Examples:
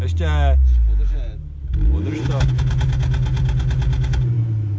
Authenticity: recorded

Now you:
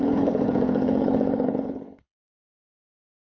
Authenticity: remade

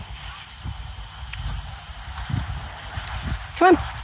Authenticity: recorded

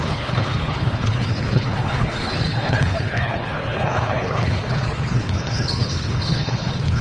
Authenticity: remade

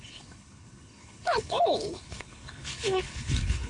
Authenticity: remade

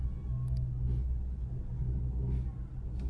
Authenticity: recorded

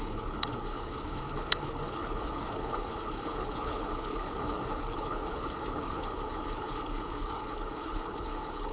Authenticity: remade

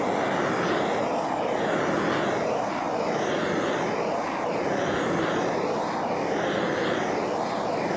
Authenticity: recorded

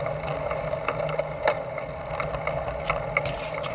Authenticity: recorded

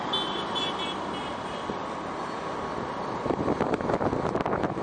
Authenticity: recorded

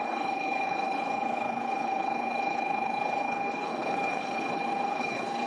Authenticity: remade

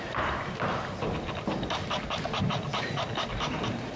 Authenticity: recorded